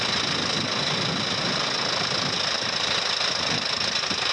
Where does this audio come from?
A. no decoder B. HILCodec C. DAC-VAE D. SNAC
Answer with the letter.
A